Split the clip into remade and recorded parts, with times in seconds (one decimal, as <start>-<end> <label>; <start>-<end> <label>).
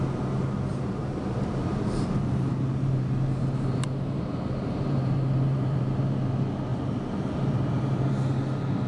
0.0-0.7 recorded; 0.7-6.0 remade; 6.0-6.7 recorded; 6.7-8.1 remade; 8.1-8.9 recorded